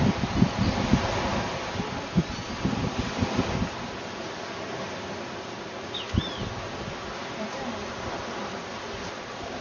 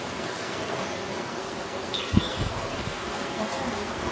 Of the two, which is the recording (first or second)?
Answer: first